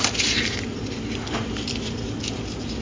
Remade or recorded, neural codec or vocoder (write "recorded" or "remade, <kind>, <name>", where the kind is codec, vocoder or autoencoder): recorded